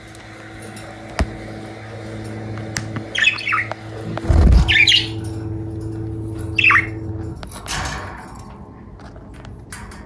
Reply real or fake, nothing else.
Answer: real